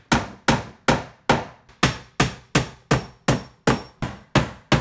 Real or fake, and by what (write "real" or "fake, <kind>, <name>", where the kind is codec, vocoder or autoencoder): real